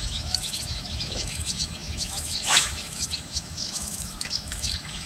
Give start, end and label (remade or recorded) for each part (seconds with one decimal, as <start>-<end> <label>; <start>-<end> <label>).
0.0-5.1 remade